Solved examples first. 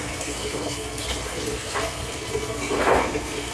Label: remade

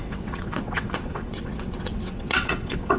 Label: remade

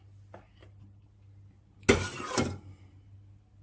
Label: recorded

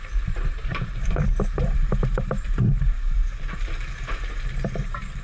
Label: remade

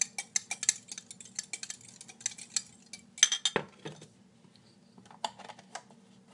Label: recorded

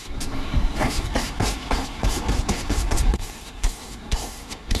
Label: remade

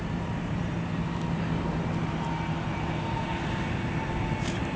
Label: recorded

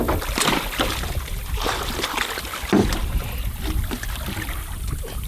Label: recorded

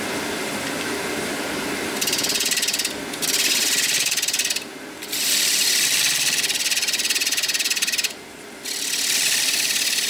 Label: remade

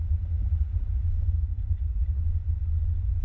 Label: recorded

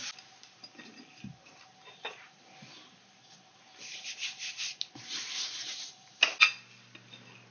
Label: recorded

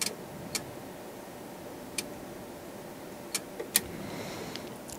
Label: recorded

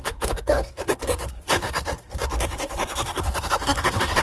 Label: remade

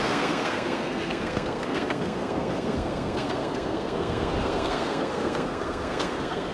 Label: remade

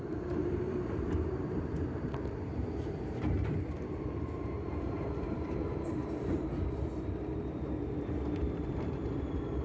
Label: remade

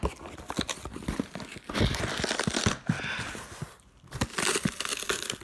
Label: recorded